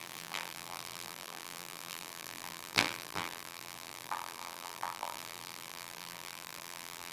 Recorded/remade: remade